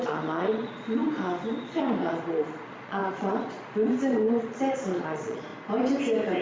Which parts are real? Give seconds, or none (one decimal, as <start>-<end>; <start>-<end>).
5.5-6.4